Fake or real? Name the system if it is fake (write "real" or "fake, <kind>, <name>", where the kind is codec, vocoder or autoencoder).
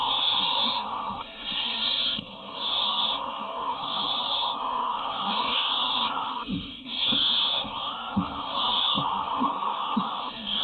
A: fake, codec, SNAC